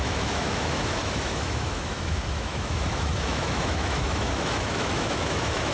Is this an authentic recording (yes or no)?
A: no